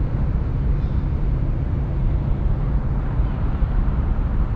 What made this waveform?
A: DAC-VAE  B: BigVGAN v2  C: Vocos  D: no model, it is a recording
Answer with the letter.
B